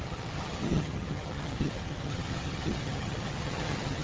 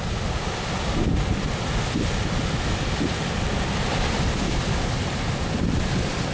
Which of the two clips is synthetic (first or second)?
first